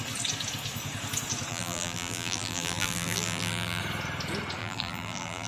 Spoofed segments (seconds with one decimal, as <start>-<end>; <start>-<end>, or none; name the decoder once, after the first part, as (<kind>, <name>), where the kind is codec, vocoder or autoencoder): 1.5-3.8 (vocoder, BigVGAN v2); 4.6-5.5